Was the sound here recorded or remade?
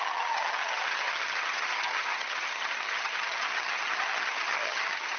remade